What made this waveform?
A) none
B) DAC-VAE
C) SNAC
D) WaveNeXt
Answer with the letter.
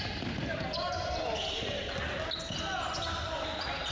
A